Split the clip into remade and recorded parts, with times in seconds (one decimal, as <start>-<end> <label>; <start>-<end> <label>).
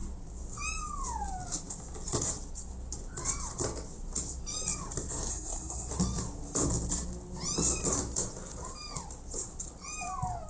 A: 0.0-5.3 recorded; 5.3-5.9 remade; 5.9-10.5 recorded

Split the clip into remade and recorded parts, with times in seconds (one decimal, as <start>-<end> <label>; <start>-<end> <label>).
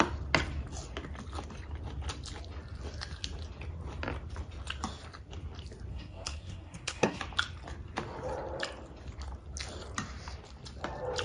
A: 0.0-5.9 recorded; 5.9-7.2 remade; 7.2-11.2 recorded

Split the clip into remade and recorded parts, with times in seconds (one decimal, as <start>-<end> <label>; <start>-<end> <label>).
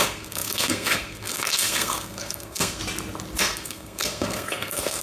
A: 0.0-2.8 remade; 2.8-3.4 recorded; 3.4-5.0 remade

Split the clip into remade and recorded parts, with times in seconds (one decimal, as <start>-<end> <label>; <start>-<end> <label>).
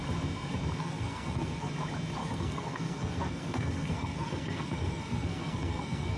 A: 0.0-0.8 recorded; 0.8-1.7 remade; 1.7-2.2 recorded; 2.2-6.2 remade